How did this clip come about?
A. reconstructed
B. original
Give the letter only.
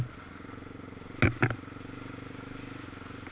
B